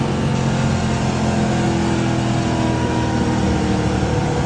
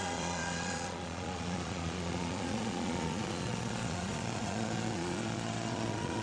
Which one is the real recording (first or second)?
first